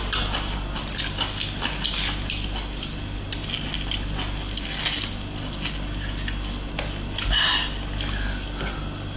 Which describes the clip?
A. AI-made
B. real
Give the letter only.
B